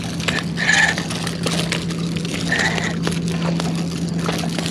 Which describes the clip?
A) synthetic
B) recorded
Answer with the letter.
B